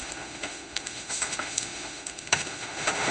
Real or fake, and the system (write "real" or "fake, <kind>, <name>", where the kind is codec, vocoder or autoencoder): fake, autoencoder, DAC-VAE